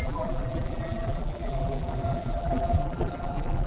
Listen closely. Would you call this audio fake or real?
fake